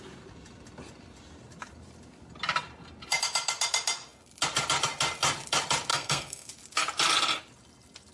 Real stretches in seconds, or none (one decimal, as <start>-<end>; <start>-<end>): 0.0-5.9; 6.5-8.1